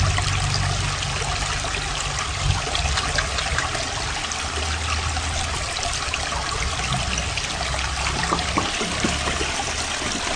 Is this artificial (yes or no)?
no